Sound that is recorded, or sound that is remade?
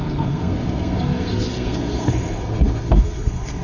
remade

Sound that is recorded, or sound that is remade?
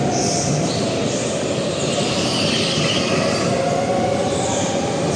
recorded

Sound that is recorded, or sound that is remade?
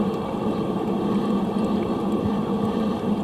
recorded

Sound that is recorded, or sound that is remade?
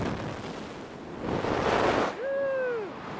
recorded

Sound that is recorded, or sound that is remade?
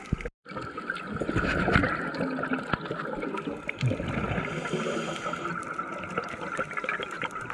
recorded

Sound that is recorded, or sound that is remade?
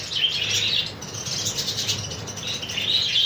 recorded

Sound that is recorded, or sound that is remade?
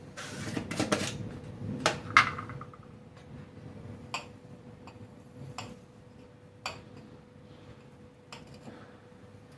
recorded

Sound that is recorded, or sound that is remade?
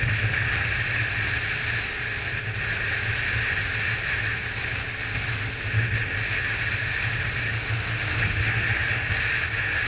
recorded